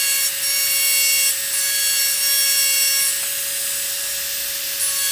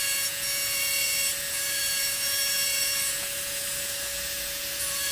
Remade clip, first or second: second